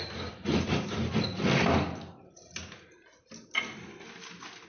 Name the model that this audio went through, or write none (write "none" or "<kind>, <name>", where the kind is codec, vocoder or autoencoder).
none